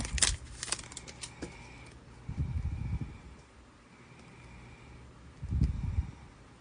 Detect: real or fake real